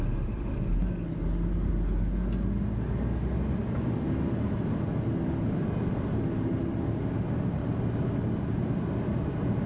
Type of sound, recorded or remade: recorded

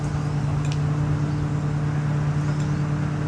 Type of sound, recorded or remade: recorded